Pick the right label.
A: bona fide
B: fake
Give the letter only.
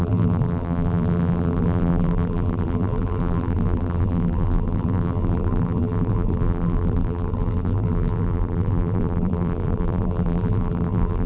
B